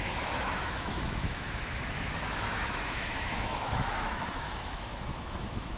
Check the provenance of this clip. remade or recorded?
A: remade